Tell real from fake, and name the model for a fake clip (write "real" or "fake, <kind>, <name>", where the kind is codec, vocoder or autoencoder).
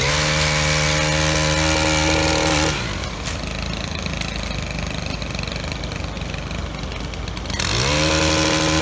real